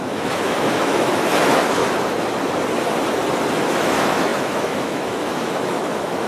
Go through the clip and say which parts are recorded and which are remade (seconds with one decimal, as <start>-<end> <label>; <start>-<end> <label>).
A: 0.0-1.8 remade; 1.8-3.5 recorded; 3.5-6.3 remade